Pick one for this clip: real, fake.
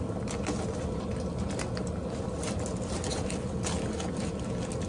real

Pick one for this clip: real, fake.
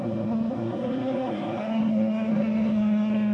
fake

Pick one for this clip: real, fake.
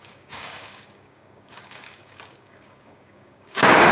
fake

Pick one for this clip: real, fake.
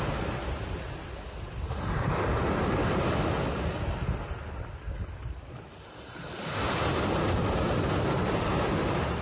real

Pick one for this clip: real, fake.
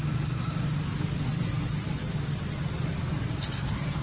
real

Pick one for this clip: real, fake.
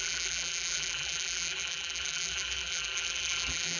fake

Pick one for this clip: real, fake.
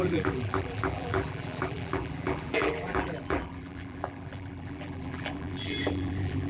fake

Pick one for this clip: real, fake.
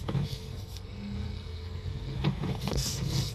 fake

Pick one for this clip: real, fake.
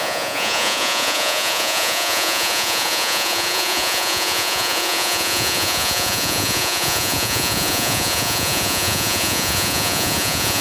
fake